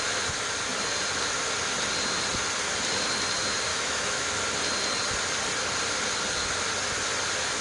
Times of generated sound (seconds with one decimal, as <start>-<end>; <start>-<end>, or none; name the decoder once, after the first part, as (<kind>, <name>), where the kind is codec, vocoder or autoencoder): 3.7-4.3 (autoencoder, DAC-VAE)